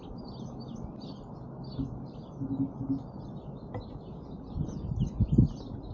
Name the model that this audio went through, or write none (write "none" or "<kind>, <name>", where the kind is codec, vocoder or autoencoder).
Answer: none